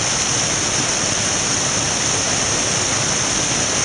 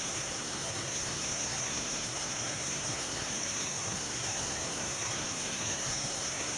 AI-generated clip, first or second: second